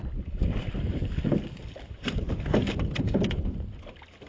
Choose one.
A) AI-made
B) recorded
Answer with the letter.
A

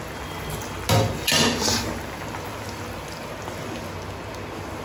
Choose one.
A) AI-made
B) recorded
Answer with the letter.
B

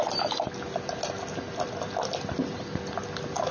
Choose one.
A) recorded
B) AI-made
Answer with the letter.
A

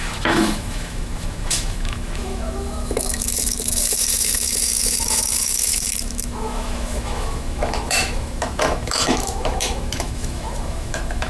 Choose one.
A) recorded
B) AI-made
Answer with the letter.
B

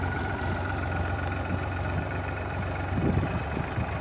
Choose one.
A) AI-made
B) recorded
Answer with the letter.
A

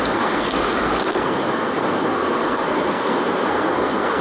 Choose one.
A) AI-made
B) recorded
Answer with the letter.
A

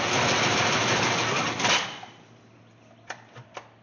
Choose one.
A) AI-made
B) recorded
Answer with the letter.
A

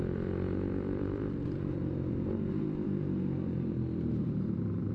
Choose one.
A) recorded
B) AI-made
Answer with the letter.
B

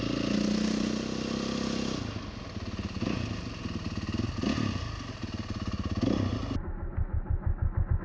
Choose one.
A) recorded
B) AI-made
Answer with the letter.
A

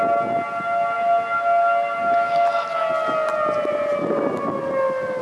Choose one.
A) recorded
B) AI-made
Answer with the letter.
A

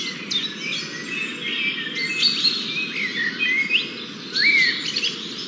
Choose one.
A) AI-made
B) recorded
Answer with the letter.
B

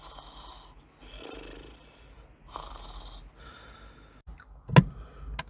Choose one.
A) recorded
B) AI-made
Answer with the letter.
A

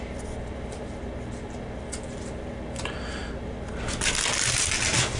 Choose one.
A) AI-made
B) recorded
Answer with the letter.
B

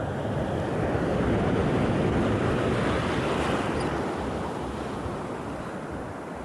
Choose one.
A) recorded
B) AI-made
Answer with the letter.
A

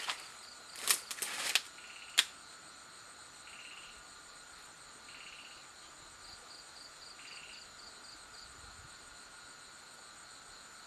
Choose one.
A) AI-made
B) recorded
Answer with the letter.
B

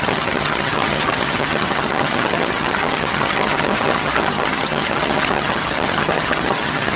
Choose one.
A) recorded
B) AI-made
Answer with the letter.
B